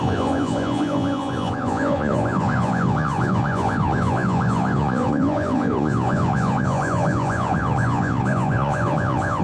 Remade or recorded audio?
remade